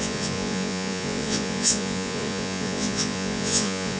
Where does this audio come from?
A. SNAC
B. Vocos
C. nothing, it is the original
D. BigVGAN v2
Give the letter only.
B